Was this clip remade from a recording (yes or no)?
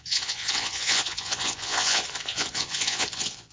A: yes